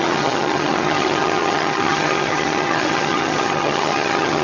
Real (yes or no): no